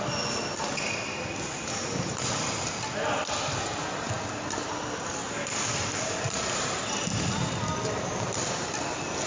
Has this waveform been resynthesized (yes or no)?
no